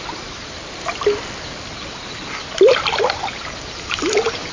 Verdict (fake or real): real